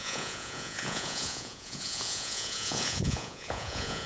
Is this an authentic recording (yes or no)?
no